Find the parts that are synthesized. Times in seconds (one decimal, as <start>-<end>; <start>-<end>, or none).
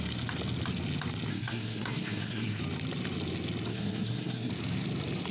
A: 1.3-2.6; 3.7-4.5